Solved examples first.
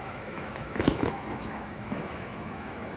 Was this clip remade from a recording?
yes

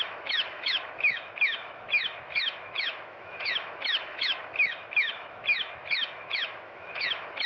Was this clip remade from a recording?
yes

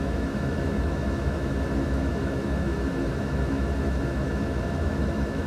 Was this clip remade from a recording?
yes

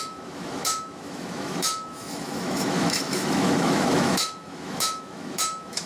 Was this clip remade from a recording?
yes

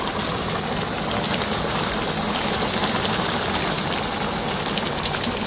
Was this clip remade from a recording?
no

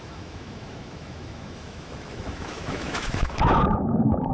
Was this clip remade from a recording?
yes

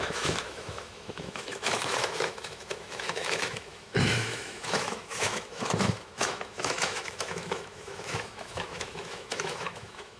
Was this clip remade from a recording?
yes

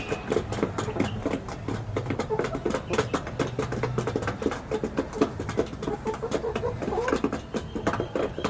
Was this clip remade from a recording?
no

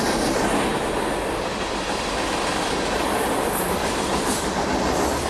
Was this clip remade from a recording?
no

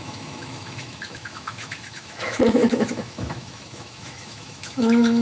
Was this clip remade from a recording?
yes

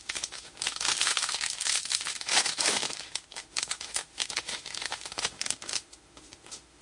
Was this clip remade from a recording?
yes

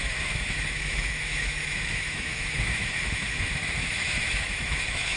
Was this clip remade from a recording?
yes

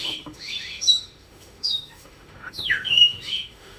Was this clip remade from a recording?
yes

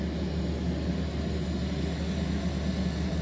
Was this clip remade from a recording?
no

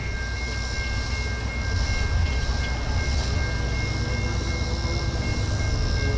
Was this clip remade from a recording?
no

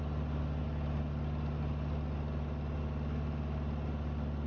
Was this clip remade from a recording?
no